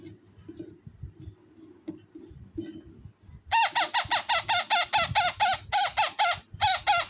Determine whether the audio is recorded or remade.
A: recorded